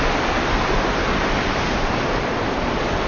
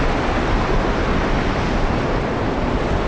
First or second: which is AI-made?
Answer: first